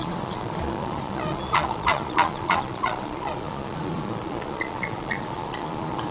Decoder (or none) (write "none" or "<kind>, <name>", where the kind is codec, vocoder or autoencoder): vocoder, Vocos